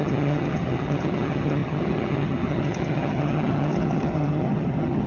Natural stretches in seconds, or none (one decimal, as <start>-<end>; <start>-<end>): none

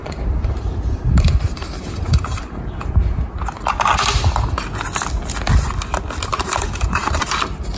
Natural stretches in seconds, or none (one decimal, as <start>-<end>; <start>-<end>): 3.2-6.3

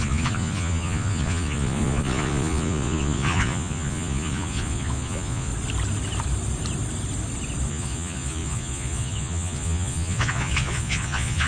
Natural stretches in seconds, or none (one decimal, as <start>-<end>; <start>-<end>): 5.5-7.7

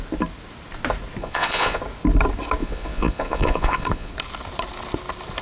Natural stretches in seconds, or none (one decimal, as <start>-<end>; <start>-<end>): 0.0-1.2; 1.8-2.6; 4.1-5.4